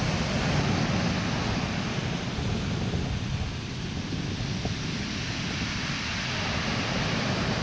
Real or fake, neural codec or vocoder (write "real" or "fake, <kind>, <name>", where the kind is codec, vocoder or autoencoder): real